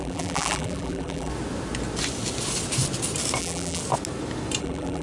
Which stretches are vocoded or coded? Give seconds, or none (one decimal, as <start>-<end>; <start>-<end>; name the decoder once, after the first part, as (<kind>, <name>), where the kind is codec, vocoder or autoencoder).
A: 0.0-1.3 (vocoder, BigVGAN v2); 3.4-3.8; 4.6-5.0